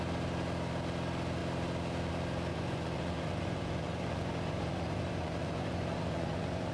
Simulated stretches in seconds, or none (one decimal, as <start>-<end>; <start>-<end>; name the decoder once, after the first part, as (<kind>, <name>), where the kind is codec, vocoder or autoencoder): 2.5-6.7 (vocoder, Vocos)